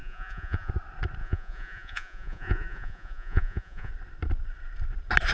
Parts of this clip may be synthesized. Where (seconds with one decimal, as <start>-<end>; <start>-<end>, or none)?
0.0-0.7; 1.2-3.9